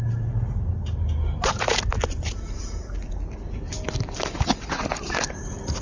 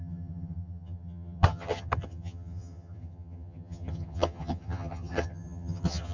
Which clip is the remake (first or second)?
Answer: second